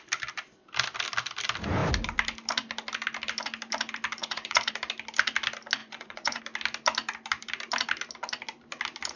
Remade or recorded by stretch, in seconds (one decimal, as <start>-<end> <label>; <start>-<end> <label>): 0.0-4.2 recorded; 4.2-4.7 remade; 4.7-5.8 recorded; 5.8-6.4 remade; 6.4-9.2 recorded